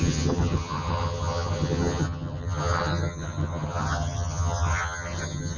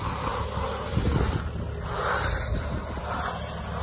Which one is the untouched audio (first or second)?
second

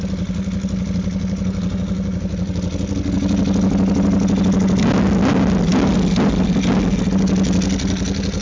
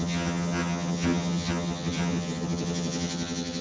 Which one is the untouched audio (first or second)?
first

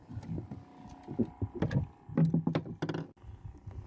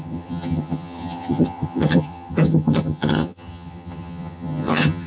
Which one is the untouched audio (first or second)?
first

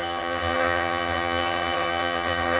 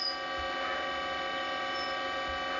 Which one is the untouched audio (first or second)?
second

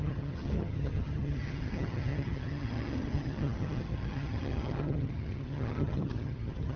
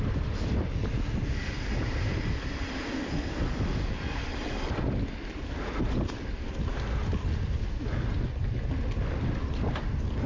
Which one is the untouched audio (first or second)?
second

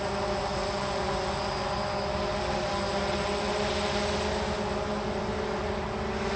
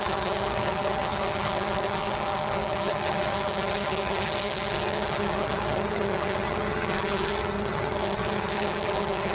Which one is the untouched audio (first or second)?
first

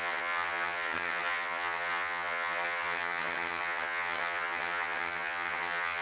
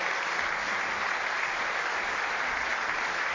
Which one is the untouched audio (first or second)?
second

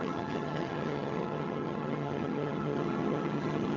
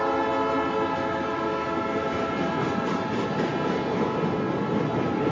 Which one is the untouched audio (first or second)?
second